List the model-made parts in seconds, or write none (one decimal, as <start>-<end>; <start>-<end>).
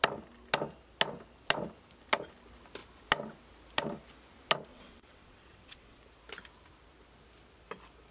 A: 4.7-6.0